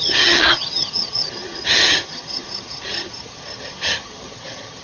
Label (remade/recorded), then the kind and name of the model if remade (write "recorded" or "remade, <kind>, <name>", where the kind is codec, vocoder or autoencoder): remade, vocoder, HiFi-GAN